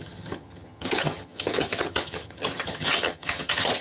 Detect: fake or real fake